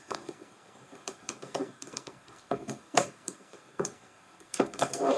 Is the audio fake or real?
fake